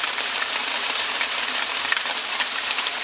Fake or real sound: fake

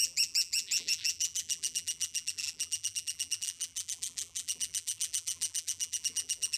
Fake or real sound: fake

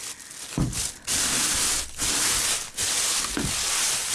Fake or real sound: real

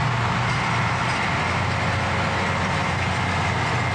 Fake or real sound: real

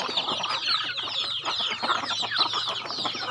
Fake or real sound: real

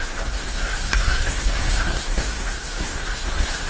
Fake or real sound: fake